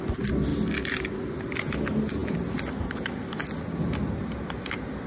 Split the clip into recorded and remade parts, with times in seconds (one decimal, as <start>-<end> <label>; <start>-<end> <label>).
0.0-5.1 recorded